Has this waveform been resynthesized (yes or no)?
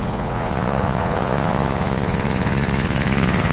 yes